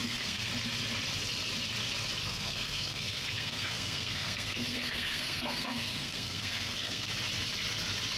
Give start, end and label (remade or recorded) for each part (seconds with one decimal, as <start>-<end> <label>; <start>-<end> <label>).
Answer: 0.0-0.5 remade; 0.5-2.2 recorded; 2.2-7.1 remade; 7.1-8.2 recorded